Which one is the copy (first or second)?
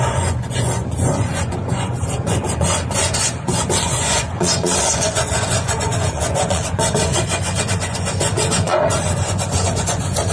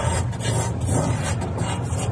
first